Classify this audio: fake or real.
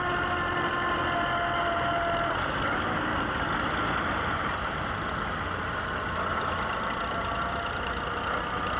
real